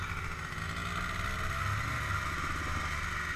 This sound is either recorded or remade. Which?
recorded